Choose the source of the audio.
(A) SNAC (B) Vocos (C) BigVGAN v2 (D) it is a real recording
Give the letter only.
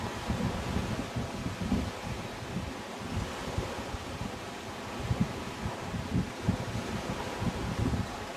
D